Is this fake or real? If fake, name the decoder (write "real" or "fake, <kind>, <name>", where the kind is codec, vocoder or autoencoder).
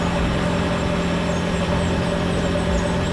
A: real